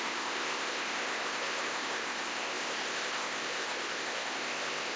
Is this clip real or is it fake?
fake